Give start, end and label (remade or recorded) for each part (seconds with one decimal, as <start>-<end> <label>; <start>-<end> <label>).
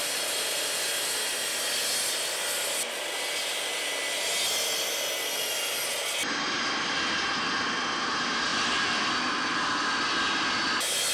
0.0-8.5 recorded; 8.5-10.1 remade; 10.1-11.1 recorded